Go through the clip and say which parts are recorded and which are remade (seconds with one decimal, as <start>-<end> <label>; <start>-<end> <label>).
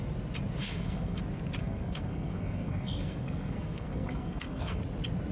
0.0-0.6 recorded; 0.6-1.2 remade; 1.2-1.6 recorded; 1.6-4.8 remade; 4.8-5.3 recorded